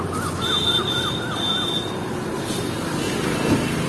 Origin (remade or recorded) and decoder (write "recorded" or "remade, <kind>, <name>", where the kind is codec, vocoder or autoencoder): recorded